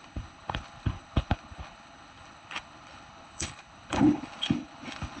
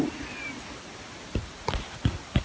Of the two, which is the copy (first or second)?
first